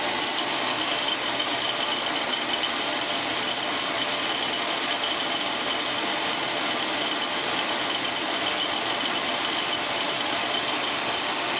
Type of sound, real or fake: real